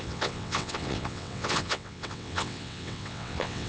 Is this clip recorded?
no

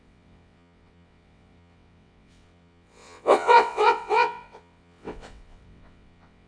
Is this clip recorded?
no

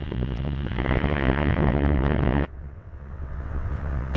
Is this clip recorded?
no